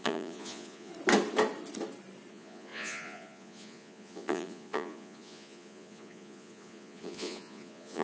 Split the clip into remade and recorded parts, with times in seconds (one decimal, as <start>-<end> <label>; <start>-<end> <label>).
0.0-0.9 remade; 0.9-2.3 recorded; 2.3-8.0 remade